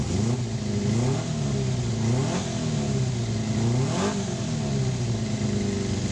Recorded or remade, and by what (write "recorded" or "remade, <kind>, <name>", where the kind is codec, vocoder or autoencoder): recorded